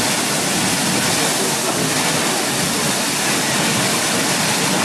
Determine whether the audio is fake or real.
real